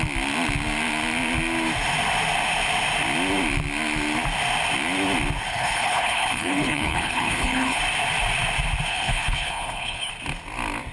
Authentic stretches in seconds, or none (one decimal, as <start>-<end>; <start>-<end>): 0.0-5.5; 7.8-8.9; 10.1-10.9